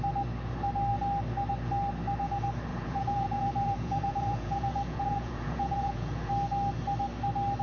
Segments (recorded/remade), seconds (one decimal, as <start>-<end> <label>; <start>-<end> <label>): 0.0-2.7 recorded; 2.7-6.3 remade; 6.3-7.6 recorded